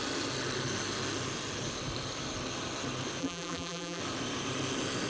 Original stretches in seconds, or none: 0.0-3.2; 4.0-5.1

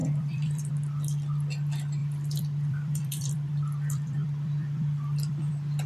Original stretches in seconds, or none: 0.7-2.0; 5.5-5.9

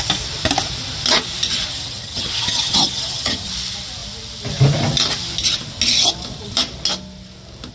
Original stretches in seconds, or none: 0.0-1.7; 3.5-7.7

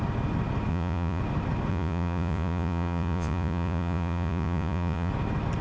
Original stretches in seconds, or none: 0.0-0.7; 1.2-1.7; 5.1-5.6

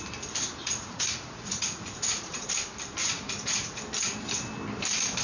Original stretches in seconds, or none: 0.0-0.6; 2.5-3.0; 3.8-5.2

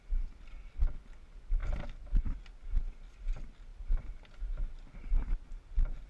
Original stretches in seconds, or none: 0.0-6.1

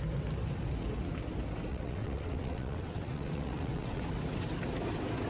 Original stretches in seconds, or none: 0.0-1.7; 4.0-5.3

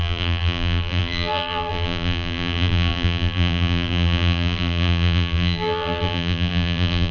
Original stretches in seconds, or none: none